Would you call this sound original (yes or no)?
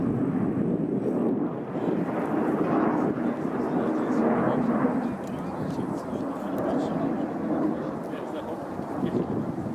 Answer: yes